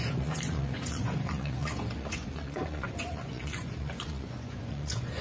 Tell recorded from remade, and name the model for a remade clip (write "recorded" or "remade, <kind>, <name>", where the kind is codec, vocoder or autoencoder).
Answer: remade, vocoder, Vocos